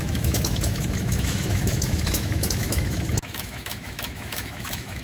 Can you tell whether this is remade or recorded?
remade